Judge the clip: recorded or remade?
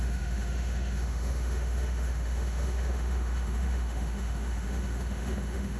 remade